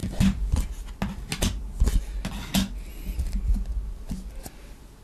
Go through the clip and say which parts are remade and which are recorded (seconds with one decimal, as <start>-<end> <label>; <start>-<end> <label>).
0.0-5.0 recorded

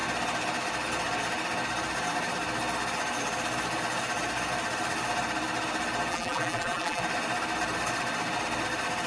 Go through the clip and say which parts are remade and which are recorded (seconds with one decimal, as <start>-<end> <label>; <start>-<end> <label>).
0.0-6.1 recorded; 6.1-7.0 remade; 7.0-9.1 recorded